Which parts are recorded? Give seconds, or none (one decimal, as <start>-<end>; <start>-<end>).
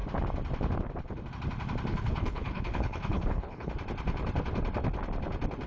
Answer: 0.0-1.9; 3.7-5.7